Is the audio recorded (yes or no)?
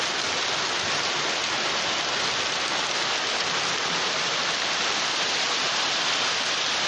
yes